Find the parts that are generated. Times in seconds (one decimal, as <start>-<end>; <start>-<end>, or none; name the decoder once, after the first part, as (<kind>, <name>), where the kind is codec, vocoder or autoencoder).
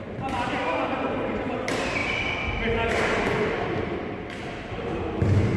none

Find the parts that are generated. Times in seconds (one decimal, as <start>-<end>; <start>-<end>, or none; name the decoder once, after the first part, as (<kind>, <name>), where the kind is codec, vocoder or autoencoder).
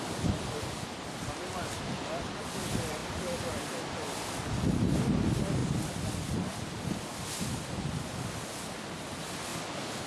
none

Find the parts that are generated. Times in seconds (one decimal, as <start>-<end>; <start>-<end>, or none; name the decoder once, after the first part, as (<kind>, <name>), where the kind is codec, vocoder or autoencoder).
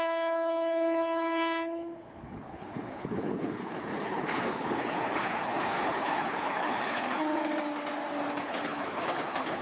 0.0-7.4 (codec, HILCodec); 8.3-9.6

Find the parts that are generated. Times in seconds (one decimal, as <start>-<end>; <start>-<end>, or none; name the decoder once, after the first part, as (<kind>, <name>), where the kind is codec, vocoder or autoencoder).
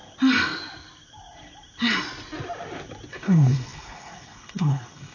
3.1-5.1 (codec, HILCodec)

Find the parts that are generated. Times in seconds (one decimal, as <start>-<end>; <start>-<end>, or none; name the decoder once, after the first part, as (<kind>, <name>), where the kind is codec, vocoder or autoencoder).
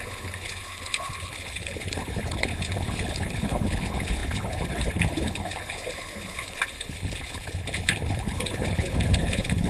0.0-9.7 (codec, HILCodec)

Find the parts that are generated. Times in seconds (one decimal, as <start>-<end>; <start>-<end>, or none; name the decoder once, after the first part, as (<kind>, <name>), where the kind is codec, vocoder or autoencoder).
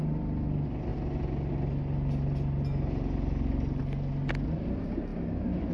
none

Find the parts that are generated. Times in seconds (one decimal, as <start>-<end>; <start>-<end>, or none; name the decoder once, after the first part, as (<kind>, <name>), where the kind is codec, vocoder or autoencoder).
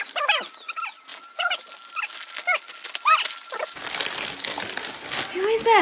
none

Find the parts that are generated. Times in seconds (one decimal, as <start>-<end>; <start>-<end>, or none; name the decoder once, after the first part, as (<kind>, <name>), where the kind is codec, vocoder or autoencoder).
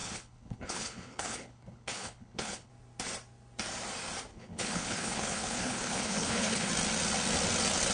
0.0-2.7 (codec, HILCodec); 4.3-6.7